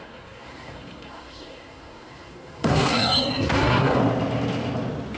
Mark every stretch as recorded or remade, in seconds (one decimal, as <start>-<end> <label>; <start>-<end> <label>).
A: 0.0-4.0 remade; 4.0-5.2 recorded